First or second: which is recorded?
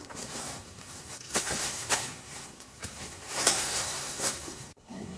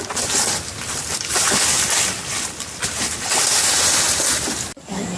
second